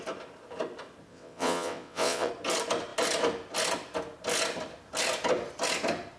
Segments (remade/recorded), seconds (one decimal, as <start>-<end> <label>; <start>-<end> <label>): 0.0-1.1 recorded; 1.1-2.3 remade; 2.3-6.2 recorded